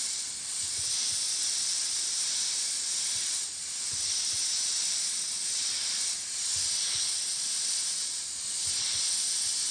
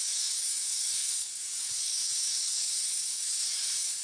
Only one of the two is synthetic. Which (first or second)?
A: second